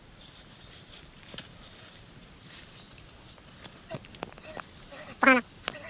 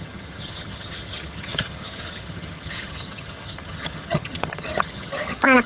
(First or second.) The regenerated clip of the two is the second